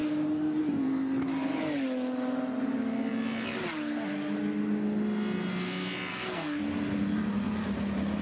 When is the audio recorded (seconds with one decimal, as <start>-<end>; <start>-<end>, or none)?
0.0-6.1; 6.6-8.2